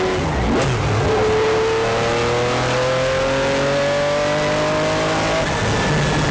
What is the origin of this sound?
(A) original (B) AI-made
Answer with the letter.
A